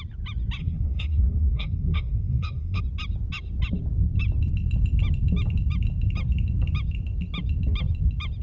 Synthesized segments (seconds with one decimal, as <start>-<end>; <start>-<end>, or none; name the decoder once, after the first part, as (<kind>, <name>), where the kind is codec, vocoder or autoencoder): 0.6-2.8 (codec, SNAC)